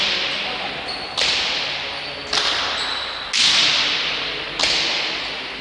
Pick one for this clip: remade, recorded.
recorded